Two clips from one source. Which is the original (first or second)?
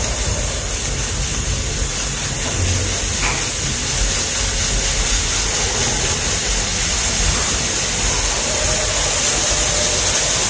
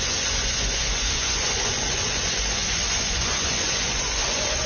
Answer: first